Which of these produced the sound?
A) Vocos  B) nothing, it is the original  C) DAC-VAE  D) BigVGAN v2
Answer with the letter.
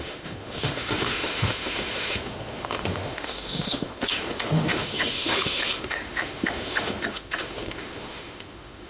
C